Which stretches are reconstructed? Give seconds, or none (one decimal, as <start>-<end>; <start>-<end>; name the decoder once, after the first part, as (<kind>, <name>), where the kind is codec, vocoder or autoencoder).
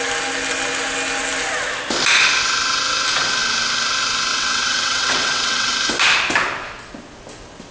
4.3-5.7 (vocoder, WaveNeXt)